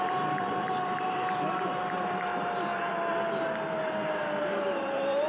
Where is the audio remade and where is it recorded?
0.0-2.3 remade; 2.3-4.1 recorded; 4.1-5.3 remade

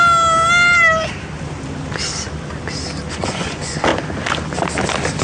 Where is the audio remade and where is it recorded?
0.0-3.1 recorded; 3.1-3.9 remade; 3.9-5.2 recorded